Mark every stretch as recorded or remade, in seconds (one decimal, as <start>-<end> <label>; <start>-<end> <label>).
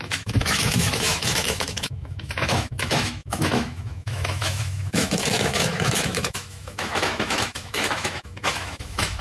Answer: 0.0-9.2 remade